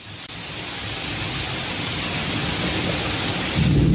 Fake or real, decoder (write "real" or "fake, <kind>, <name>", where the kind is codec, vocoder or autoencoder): real